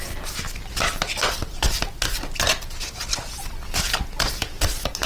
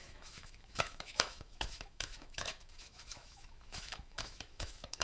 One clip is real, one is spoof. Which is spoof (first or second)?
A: second